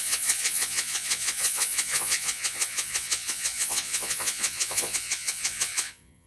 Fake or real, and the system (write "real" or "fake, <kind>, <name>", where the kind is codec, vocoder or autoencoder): fake, vocoder, Vocos